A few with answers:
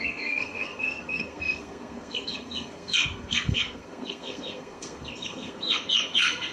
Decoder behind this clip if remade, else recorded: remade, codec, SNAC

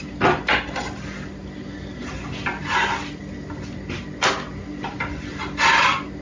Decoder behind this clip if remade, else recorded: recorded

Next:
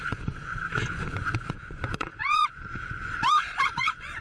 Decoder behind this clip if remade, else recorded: remade, vocoder, Vocos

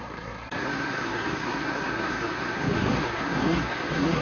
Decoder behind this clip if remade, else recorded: remade, codec, SNAC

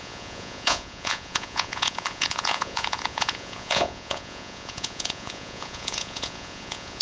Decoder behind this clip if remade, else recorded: remade, vocoder, Vocos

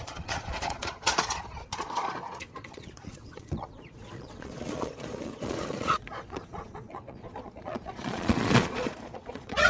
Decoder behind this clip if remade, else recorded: remade, vocoder, Vocos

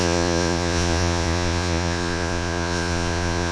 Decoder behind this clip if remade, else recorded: remade, vocoder, Vocos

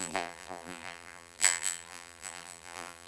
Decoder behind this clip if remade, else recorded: remade, vocoder, BigVGAN v2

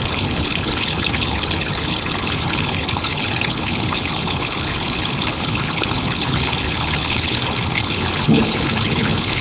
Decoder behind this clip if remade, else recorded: remade, codec, HILCodec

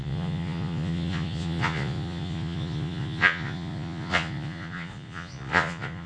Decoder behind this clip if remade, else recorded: remade, vocoder, Vocos